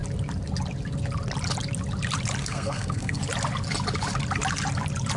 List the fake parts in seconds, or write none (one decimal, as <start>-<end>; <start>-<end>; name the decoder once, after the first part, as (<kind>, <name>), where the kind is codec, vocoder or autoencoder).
2.4-3.2 (codec, SNAC)